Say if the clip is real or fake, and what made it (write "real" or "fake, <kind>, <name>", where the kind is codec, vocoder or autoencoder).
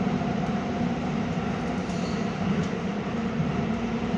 fake, vocoder, BigVGAN v2